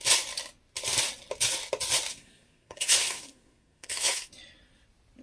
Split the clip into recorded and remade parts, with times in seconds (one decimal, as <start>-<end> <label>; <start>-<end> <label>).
0.0-2.1 recorded; 2.1-4.3 remade; 4.3-5.2 recorded